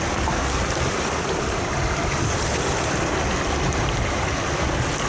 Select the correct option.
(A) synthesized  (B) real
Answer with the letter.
B